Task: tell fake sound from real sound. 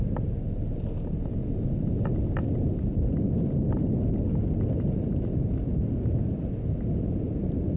real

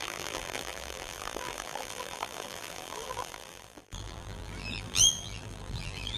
fake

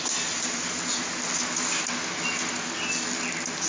real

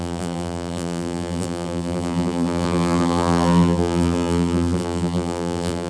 fake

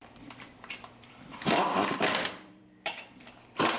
fake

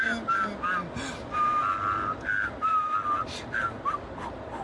real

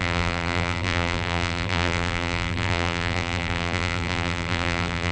fake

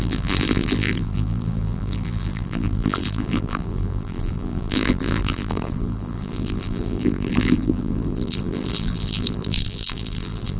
fake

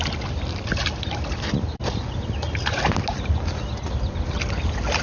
real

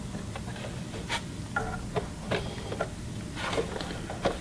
real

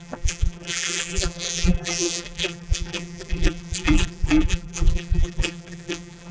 fake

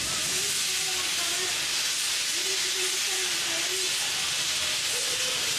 fake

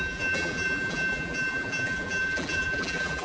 fake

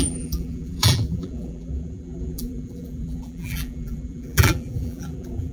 fake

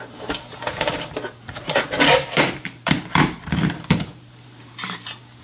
fake